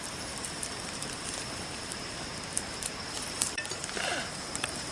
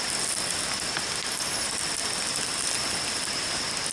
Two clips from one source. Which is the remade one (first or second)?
first